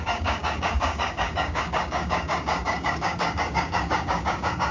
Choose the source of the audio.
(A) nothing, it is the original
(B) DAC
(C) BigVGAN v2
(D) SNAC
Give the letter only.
B